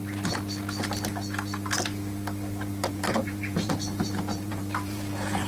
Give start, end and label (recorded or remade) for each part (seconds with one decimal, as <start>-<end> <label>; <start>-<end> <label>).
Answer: 0.0-2.7 recorded; 2.7-5.5 remade